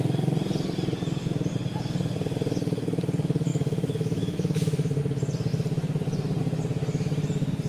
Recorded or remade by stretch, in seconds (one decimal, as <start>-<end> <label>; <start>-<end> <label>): 0.0-3.5 recorded; 3.5-5.0 remade; 5.0-7.7 recorded